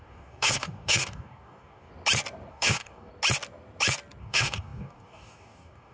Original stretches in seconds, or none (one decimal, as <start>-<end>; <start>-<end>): 1.9-2.5; 3.1-4.2